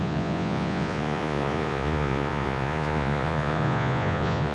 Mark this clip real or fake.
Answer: fake